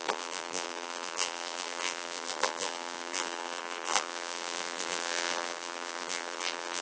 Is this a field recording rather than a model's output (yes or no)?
no